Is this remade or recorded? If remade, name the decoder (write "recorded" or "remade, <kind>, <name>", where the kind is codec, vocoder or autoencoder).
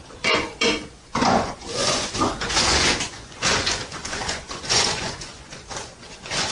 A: remade, vocoder, Vocos